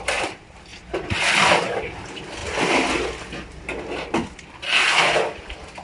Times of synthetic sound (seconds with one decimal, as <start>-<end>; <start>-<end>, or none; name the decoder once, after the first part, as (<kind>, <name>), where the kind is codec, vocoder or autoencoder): 0.0-2.4 (vocoder, BigVGAN v2); 4.1-5.8